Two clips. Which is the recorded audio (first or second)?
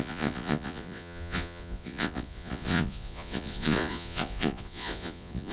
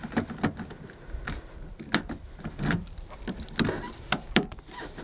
second